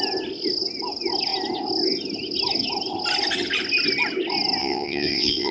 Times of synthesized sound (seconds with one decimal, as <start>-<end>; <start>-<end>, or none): 4.6-5.5